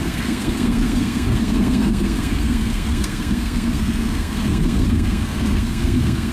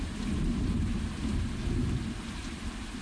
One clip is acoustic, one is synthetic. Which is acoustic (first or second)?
second